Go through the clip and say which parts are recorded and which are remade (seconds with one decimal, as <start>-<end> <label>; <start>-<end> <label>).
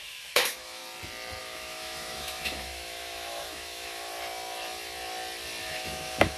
0.0-0.8 remade; 0.8-1.4 recorded; 1.4-4.1 remade; 4.1-5.6 recorded; 5.6-6.4 remade